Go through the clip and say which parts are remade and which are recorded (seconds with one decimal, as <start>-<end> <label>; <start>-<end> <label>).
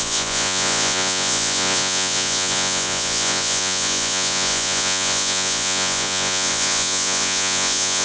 0.0-8.0 remade